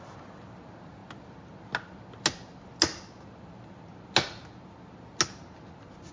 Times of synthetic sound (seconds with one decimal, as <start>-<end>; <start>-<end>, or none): none